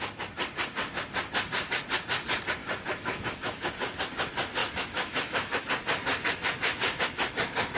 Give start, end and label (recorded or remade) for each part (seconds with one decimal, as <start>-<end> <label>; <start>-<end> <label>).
0.0-2.6 recorded; 2.6-3.7 remade; 3.7-4.6 recorded; 4.6-5.6 remade; 5.6-7.8 recorded